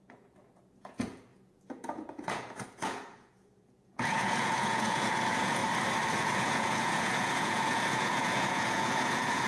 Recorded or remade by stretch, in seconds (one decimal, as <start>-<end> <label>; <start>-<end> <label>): 0.0-5.6 remade; 5.6-6.1 recorded; 6.1-9.5 remade